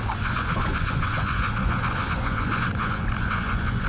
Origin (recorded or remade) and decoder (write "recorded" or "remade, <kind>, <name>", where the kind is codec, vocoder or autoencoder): remade, vocoder, Vocos